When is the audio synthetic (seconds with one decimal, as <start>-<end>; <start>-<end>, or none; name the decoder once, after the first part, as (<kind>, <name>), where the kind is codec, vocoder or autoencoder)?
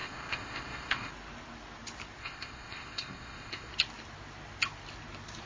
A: 0.0-1.1 (codec, ZipCodec); 2.2-3.7